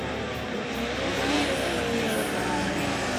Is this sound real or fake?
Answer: real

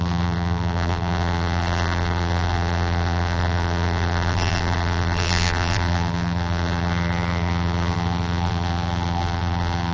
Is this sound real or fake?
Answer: fake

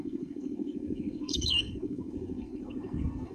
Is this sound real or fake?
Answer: fake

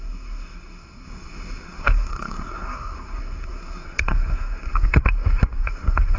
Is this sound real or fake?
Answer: fake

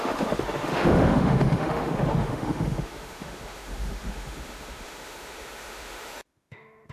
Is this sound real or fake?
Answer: fake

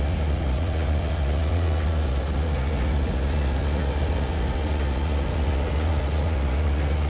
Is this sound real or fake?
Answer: fake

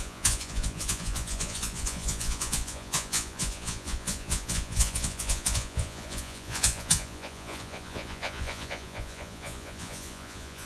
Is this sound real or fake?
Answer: fake